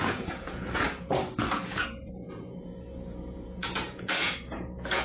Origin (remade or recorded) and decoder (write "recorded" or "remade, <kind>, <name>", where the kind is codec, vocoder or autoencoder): remade, vocoder, Vocos